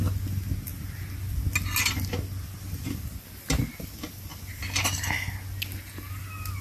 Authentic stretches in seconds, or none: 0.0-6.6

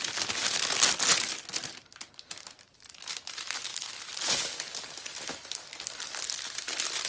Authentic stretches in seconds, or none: 0.0-7.1

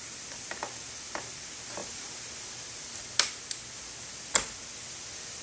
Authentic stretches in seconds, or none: 0.0-5.4

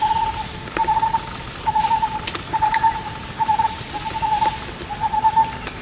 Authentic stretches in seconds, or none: 0.0-0.8; 3.3-5.8

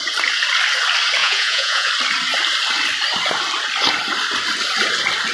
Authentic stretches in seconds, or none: 0.0-1.2; 1.9-5.3

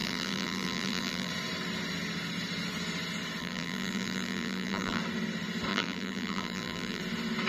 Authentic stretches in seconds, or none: 1.3-3.4; 5.0-5.7; 7.0-7.5

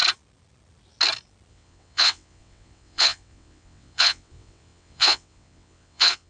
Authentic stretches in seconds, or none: 0.0-1.5